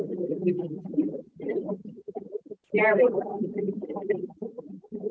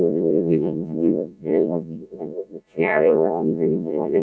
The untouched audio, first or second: first